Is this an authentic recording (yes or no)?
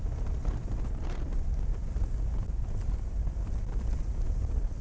yes